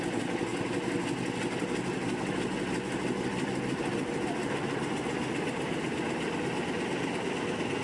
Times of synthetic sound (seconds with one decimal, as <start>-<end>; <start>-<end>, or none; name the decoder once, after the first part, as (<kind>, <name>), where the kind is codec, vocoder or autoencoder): none